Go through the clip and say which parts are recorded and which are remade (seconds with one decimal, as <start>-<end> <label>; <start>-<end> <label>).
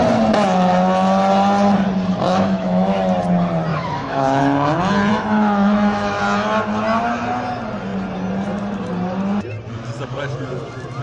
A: 0.0-2.3 recorded; 2.3-3.0 remade; 3.0-3.7 recorded; 3.7-4.4 remade; 4.4-5.1 recorded; 5.1-6.2 remade; 6.2-11.0 recorded